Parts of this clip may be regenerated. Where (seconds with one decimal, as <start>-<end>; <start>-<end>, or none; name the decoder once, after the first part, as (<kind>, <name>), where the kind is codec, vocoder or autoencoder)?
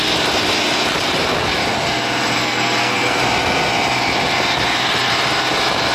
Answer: 2.4-3.2 (codec, SNAC)